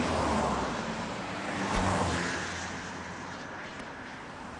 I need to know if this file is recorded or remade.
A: remade